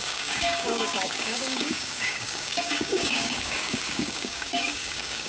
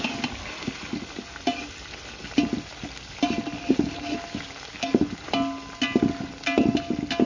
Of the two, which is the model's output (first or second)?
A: first